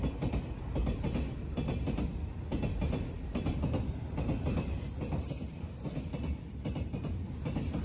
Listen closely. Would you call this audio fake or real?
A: real